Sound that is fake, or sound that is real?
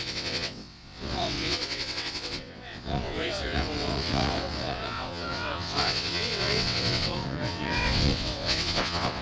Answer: fake